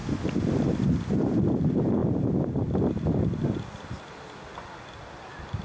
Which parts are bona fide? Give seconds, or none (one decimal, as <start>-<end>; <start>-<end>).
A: 0.0-5.6